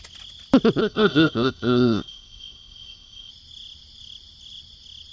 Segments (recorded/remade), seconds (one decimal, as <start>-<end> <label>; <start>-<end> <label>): 0.0-0.8 recorded; 0.8-3.3 remade; 3.3-5.1 recorded